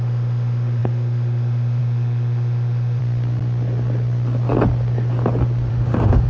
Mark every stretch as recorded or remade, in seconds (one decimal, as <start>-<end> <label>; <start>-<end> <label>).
0.0-3.0 remade; 3.0-5.7 recorded; 5.7-6.3 remade